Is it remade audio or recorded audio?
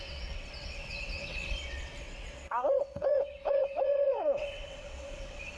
remade